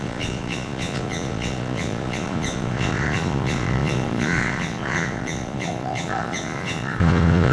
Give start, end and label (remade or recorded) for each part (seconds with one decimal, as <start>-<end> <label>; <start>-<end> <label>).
0.0-7.5 remade